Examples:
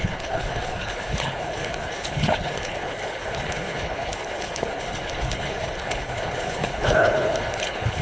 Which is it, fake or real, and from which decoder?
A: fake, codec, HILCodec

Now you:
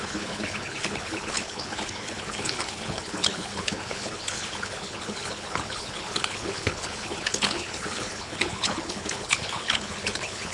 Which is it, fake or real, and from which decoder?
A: fake, codec, HILCodec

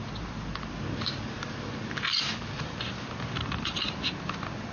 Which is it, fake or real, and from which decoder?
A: real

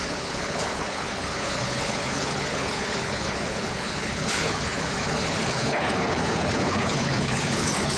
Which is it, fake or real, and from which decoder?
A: fake, codec, HILCodec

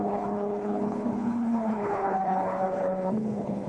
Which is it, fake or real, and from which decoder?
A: fake, codec, HILCodec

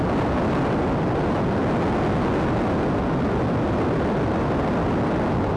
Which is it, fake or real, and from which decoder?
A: real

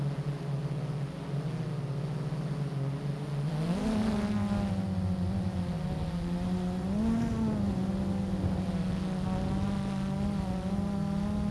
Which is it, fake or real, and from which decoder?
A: real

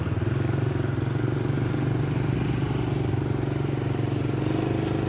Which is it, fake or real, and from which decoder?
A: real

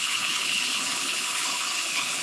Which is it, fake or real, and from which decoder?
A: fake, codec, HILCodec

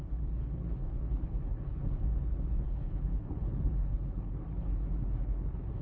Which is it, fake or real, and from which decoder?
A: fake, codec, HILCodec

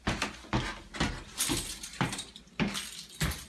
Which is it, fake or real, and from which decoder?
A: real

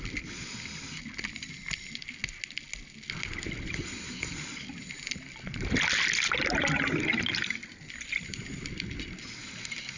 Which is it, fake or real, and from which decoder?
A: real